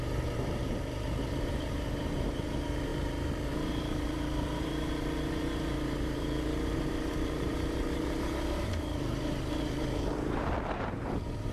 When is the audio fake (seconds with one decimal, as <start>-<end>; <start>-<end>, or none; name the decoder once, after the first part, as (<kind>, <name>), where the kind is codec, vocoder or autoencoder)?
0.0-11.5 (vocoder, BigVGAN v2)